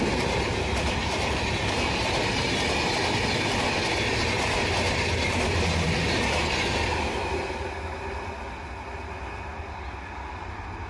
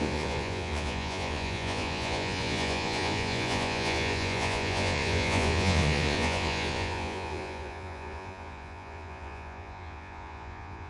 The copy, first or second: second